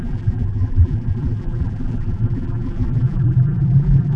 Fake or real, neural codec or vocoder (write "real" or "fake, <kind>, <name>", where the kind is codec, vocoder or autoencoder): fake, vocoder, BigVGAN v2